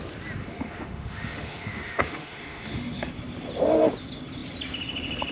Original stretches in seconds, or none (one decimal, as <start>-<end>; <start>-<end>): 0.0-0.4; 3.1-5.3